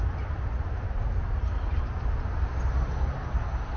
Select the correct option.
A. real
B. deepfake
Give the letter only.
A